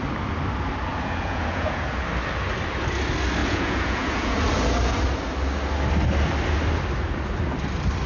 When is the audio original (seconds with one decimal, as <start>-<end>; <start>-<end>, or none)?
0.0-0.9; 2.0-3.4; 4.3-8.1